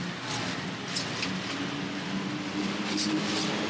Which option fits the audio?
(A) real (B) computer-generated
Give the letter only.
A